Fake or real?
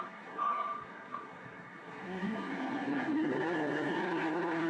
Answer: fake